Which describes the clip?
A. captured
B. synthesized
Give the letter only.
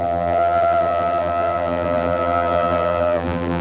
B